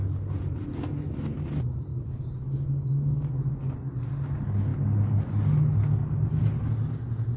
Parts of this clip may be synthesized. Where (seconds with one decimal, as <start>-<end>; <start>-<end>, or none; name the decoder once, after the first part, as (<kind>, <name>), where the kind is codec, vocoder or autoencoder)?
1.9-3.3 (codec, DAC)